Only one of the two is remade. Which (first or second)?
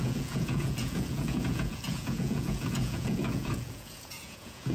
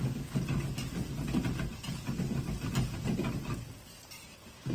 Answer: first